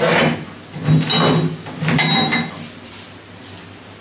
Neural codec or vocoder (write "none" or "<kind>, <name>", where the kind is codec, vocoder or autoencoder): none